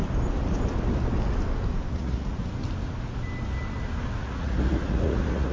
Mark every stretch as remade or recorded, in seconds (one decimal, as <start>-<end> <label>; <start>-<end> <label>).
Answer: 0.0-1.9 recorded; 1.9-2.4 remade; 2.4-4.1 recorded; 4.1-5.5 remade